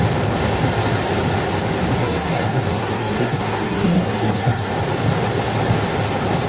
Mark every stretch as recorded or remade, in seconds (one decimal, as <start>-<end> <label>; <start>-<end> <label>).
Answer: 0.0-2.0 recorded; 2.0-4.7 remade; 4.7-6.5 recorded

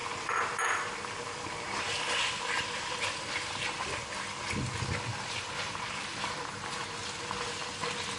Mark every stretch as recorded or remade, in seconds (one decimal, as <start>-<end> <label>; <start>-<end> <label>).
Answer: 0.0-5.1 recorded; 5.1-7.0 remade; 7.0-8.2 recorded